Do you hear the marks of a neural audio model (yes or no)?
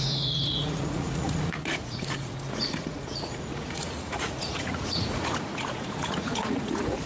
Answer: yes